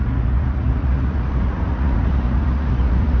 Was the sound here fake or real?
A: fake